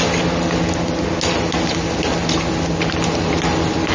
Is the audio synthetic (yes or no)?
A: no